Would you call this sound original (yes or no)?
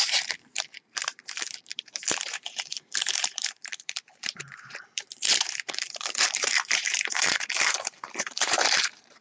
no